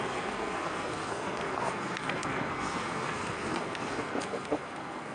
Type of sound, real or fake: fake